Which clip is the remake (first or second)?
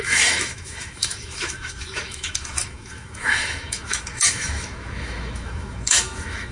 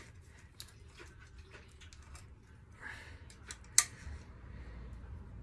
first